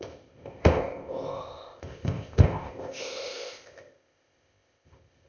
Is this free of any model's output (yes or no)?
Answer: no